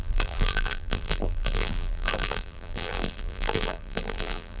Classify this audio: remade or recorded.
remade